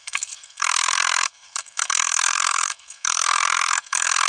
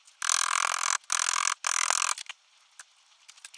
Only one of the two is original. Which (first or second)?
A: second